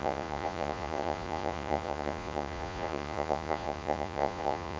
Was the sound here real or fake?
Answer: fake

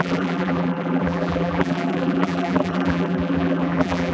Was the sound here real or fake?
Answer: fake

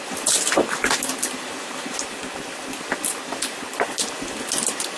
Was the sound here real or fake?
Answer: real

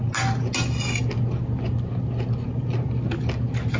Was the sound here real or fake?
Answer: real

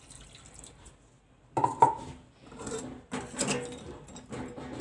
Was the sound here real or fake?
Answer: real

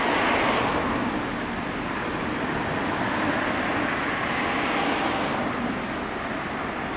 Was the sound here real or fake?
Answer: real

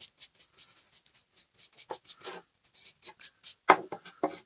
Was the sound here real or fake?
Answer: real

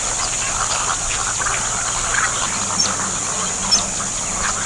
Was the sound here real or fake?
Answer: real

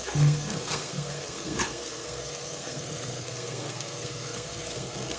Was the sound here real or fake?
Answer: fake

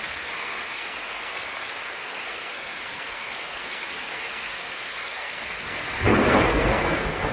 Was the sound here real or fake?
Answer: fake